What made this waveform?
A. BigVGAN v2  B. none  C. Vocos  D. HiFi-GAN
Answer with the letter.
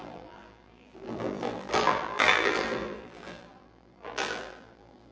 A